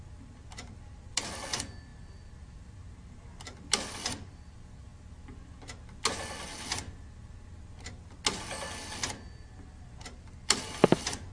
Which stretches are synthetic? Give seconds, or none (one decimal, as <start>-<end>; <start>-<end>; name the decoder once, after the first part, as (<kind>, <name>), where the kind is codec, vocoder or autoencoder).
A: 0.0-4.9 (vocoder, BigVGAN v2); 9.8-11.3